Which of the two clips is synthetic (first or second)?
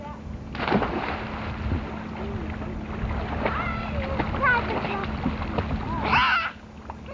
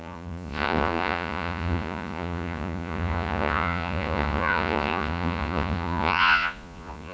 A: second